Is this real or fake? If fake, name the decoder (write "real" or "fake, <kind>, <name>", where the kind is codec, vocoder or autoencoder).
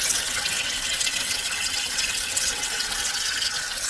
fake, vocoder, WaveNeXt